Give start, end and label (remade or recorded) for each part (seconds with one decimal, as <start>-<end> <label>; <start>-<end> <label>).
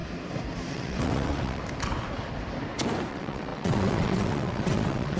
0.0-0.7 recorded; 0.7-1.6 remade; 1.6-3.1 recorded; 3.1-5.2 remade